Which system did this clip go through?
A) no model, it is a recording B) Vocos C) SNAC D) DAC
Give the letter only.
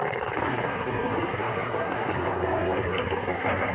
C